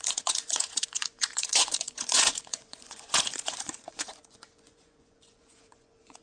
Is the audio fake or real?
fake